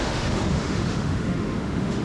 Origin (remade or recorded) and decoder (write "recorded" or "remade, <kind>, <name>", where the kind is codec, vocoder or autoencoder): remade, autoencoder, DAC-VAE